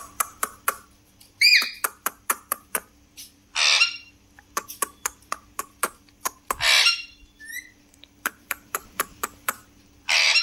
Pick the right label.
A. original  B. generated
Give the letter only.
B